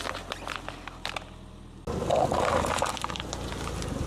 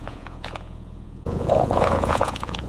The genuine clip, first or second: first